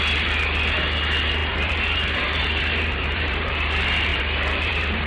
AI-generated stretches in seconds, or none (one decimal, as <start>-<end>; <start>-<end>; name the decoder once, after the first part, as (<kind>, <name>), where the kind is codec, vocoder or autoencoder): 1.4-3.5 (vocoder, BigVGAN v2); 4.1-5.1